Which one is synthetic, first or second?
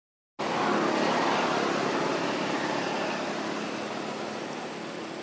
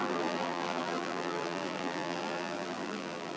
second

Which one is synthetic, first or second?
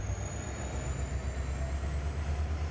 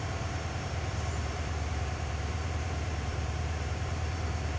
second